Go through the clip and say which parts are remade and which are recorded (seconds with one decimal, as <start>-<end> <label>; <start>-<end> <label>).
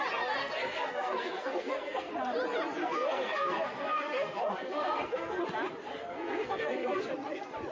0.0-0.4 recorded; 0.4-2.1 remade; 2.1-2.8 recorded; 2.8-5.4 remade; 5.4-5.9 recorded; 5.9-7.1 remade; 7.1-7.7 recorded